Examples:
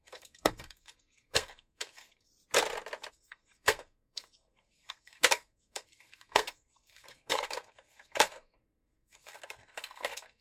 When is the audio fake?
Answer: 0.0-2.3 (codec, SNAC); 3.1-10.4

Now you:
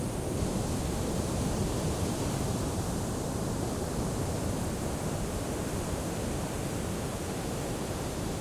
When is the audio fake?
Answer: 1.6-2.9 (vocoder, BigVGAN v2)

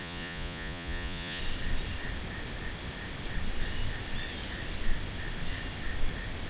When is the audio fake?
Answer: 0.0-1.4 (vocoder, Vocos)

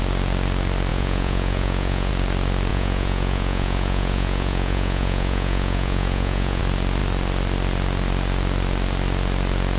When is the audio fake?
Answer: 0.9-2.1 (vocoder, Vocos); 2.7-6.6

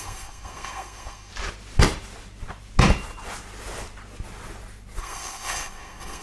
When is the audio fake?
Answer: 0.0-1.3 (codec, SNAC); 5.0-6.2

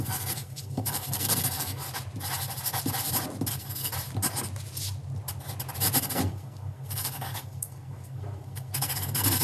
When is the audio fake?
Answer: 0.0-1.8 (codec, SNAC); 3.5-3.9; 6.0-9.4

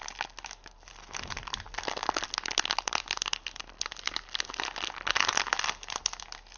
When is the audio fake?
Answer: none